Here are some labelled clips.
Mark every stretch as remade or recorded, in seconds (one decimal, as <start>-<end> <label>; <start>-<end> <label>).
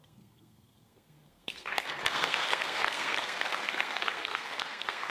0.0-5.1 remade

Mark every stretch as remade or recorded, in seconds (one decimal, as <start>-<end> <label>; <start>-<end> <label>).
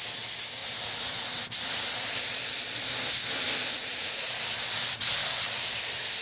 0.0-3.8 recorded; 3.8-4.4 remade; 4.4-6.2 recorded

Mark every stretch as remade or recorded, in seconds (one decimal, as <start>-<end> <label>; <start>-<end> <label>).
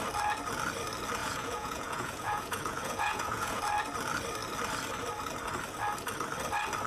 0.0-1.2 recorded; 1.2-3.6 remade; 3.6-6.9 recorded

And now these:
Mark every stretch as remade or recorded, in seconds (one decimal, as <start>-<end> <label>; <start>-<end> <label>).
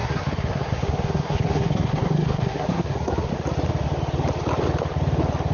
0.0-3.3 remade; 3.3-5.5 recorded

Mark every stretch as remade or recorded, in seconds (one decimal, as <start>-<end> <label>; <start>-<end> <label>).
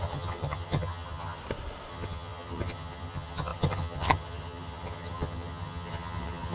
0.0-1.4 remade; 1.4-1.9 recorded; 1.9-6.5 remade